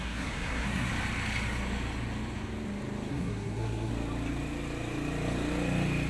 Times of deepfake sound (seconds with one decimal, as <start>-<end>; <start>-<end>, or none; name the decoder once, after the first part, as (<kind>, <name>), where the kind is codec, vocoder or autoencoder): 0.0-0.9 (codec, SNAC); 3.1-3.9